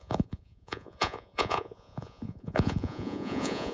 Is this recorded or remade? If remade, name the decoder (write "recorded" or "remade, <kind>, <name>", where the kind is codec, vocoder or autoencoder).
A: remade, vocoder, Vocos